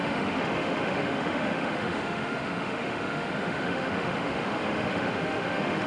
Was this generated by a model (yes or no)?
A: yes